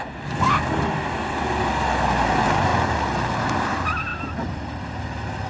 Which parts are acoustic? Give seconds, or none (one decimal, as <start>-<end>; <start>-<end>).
0.0-5.5

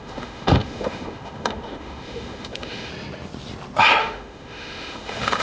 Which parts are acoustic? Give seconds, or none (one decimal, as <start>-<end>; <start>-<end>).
2.9-4.0